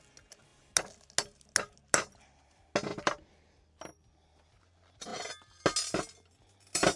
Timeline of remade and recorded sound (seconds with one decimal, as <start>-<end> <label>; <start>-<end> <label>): 0.0-2.9 recorded; 2.9-4.6 remade; 4.6-7.0 recorded